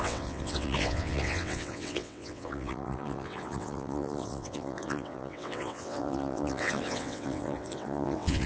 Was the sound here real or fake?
fake